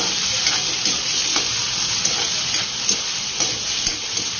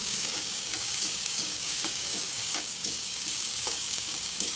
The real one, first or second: first